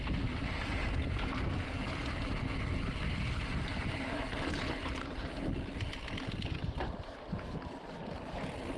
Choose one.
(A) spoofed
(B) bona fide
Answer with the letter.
B